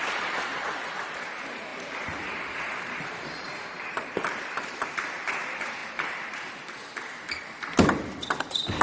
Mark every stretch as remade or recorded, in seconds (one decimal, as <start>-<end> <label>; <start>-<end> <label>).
0.0-8.8 remade